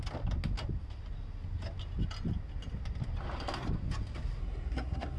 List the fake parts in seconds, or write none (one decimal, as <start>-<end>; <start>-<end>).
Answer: 4.4-5.2